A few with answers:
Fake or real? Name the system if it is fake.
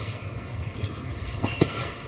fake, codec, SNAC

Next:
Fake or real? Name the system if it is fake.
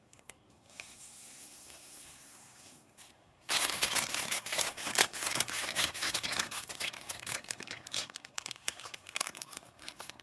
fake, codec, SNAC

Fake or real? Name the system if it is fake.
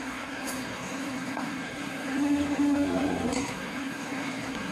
fake, codec, SNAC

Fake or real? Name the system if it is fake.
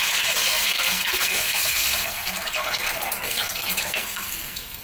fake, codec, SNAC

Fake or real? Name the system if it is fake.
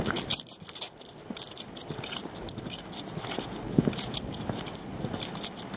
real